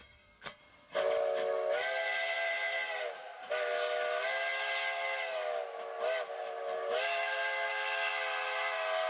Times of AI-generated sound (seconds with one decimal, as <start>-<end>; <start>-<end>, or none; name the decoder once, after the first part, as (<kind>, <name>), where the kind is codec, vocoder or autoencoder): 0.0-0.6 (codec, SNAC)